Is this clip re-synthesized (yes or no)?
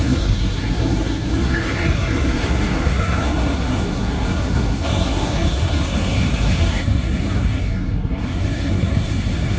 yes